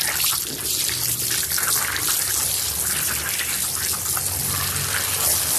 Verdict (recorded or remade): recorded